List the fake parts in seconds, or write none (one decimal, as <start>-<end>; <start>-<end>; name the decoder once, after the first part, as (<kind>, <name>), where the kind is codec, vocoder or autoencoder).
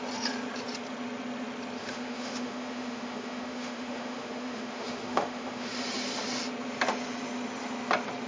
1.8-5.7 (autoencoder, DAC-VAE)